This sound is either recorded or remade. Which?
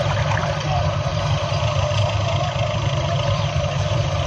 remade